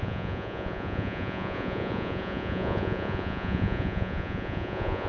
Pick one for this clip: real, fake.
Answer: fake